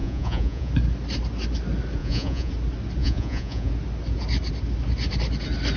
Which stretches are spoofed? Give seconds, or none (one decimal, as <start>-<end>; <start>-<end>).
0.0-0.7; 2.0-2.5; 3.0-3.7